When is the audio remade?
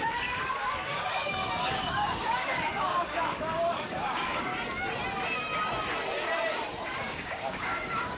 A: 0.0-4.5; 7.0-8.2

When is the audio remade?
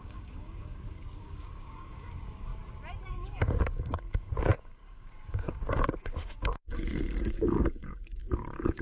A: 0.0-2.5; 3.1-8.8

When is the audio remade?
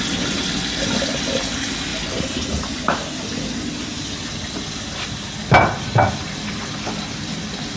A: none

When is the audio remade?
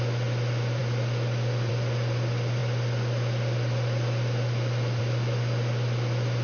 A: none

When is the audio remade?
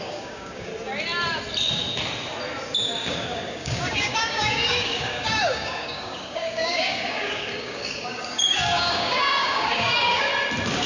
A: 0.0-0.7; 2.8-10.3